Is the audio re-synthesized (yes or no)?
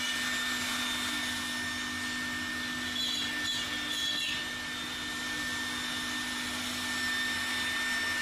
no